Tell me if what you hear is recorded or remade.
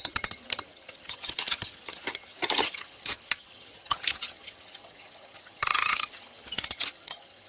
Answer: remade